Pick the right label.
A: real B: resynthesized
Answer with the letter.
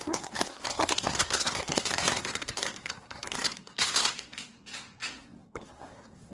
B